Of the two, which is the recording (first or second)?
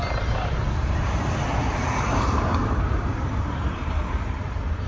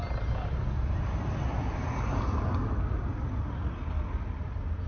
second